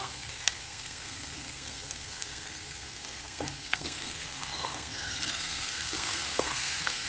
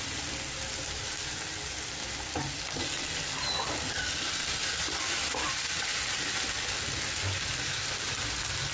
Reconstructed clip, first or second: first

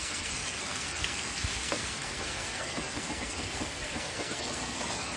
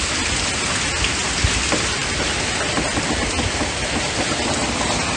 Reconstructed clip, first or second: first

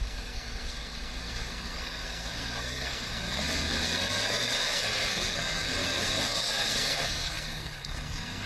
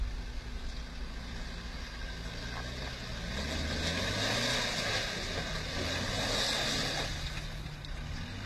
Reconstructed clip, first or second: first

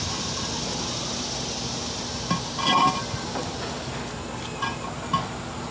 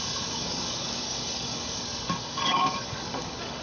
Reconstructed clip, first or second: second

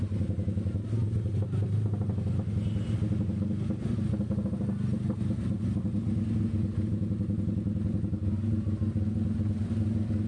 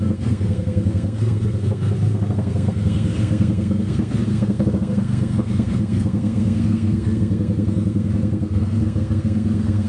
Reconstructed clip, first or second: second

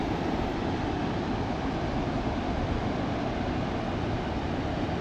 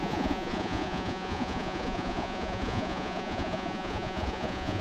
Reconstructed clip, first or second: second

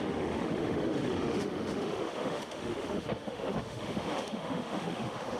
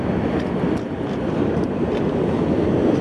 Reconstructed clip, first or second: first